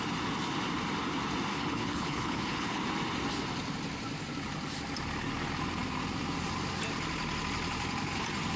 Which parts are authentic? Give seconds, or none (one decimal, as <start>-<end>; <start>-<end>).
0.0-1.5; 2.8-8.6